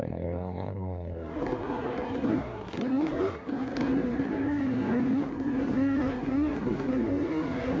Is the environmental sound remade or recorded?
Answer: remade